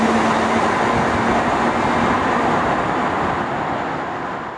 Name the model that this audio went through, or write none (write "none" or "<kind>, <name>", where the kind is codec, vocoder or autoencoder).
none